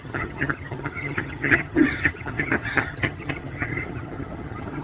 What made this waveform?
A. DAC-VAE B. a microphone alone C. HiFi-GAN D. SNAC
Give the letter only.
C